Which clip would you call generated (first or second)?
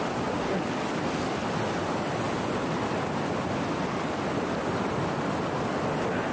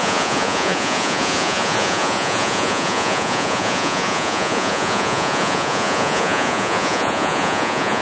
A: second